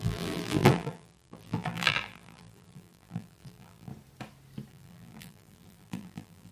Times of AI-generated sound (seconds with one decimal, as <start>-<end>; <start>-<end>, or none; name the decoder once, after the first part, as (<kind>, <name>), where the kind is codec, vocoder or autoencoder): 0.0-3.9 (vocoder, BigVGAN v2); 4.7-6.5